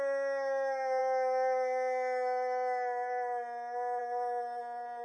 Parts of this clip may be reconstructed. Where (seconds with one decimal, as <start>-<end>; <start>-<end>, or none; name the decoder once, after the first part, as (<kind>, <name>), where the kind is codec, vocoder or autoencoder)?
none